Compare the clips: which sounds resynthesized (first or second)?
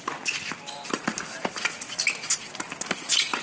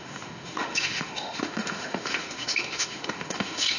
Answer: second